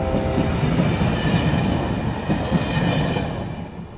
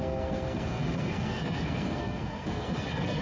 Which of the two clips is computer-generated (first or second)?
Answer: second